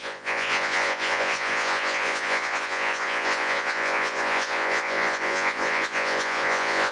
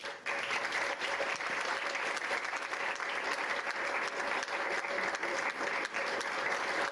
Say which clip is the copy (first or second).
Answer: first